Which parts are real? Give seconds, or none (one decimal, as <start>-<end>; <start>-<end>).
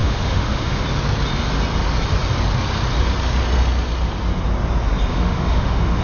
0.8-5.1